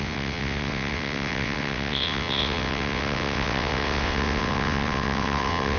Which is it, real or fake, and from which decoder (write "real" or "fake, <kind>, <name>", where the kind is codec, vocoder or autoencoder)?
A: fake, vocoder, WaveNeXt